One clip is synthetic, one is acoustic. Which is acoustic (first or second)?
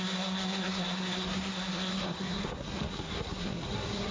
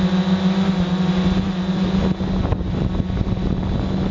second